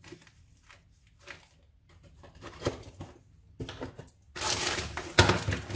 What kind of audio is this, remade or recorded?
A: recorded